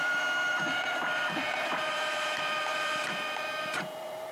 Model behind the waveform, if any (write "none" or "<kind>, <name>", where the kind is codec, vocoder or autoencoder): vocoder, BigVGAN v2